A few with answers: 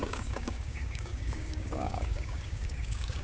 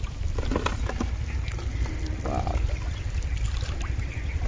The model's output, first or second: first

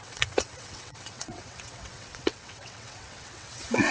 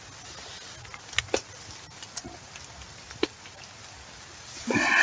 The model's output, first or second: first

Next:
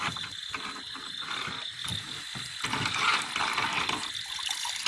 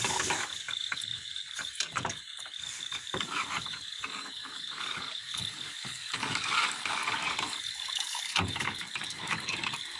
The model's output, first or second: second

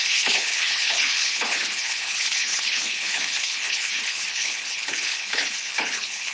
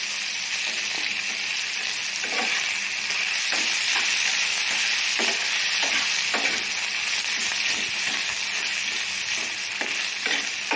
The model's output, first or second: first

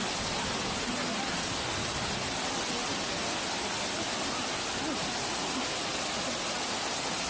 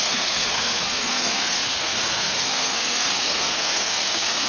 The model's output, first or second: second